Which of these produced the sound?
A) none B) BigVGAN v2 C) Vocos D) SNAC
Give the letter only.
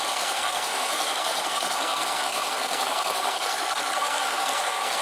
D